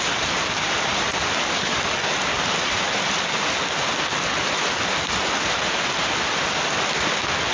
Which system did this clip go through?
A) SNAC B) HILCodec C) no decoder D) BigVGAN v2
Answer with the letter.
C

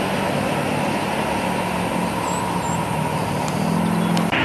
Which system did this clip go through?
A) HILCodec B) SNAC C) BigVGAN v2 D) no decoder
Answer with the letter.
D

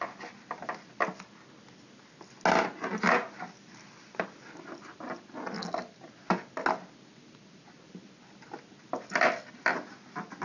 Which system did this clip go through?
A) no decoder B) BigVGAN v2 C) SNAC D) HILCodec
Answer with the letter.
A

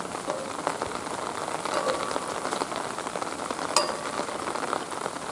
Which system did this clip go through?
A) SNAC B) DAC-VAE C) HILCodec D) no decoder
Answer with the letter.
D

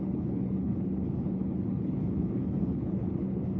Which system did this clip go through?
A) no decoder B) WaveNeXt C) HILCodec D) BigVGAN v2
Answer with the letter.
C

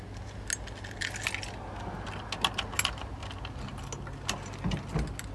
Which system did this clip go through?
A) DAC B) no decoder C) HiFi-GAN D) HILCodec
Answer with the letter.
B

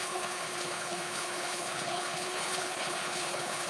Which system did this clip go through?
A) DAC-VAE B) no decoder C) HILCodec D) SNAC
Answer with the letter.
C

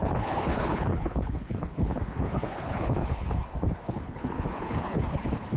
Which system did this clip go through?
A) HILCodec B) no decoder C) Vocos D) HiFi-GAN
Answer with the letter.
A